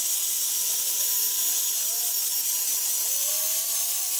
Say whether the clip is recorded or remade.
recorded